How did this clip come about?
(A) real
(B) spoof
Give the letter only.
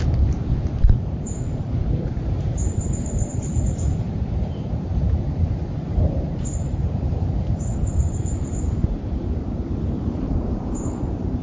B